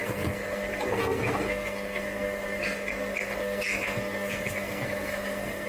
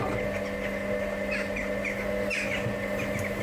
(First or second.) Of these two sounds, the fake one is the first